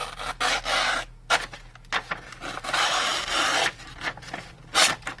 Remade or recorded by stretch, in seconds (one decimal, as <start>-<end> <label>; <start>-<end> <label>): 0.0-2.4 recorded; 2.4-5.2 remade